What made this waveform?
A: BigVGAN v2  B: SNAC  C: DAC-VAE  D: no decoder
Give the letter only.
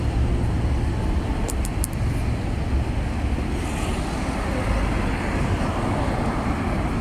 D